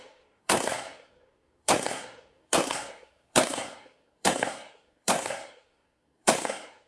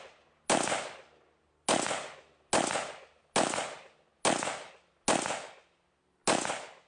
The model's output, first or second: first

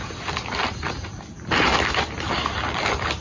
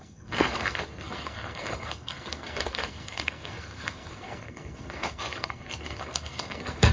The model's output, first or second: second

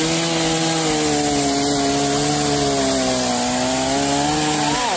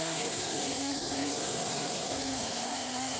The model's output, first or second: second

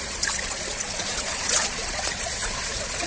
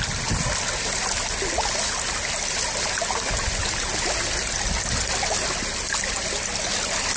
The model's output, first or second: first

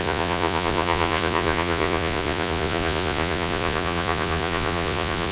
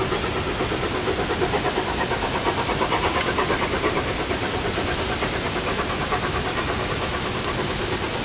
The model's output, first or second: first